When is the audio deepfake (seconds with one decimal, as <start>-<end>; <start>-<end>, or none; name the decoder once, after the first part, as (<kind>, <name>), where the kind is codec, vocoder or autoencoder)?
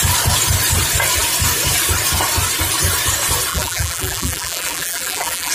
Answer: 3.5-5.5 (vocoder, BigVGAN v2)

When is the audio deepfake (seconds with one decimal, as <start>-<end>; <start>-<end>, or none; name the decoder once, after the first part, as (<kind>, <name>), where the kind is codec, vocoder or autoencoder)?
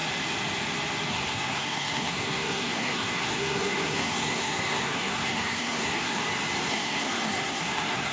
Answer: 1.1-6.2 (codec, SNAC); 6.7-8.1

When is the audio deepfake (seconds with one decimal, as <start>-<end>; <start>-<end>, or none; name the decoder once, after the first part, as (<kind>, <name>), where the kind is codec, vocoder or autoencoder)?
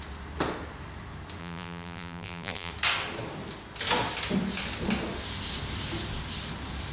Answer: 1.4-2.7 (vocoder, BigVGAN v2)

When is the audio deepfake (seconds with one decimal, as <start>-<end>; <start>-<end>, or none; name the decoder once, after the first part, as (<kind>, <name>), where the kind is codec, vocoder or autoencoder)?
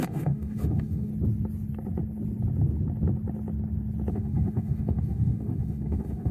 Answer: 0.0-1.1 (autoencoder, DAC-VAE); 4.1-6.3